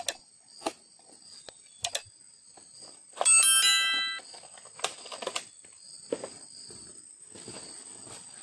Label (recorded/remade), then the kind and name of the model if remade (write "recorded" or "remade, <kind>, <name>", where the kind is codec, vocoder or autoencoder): recorded